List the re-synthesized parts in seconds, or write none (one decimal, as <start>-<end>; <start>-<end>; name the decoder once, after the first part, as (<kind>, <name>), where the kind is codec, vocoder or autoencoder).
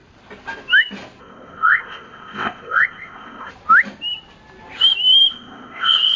1.2-3.5 (codec, ZipCodec); 5.3-6.2